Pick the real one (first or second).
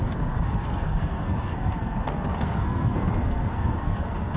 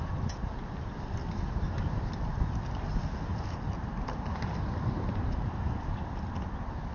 second